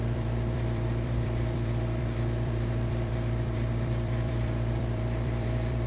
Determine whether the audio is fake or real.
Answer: fake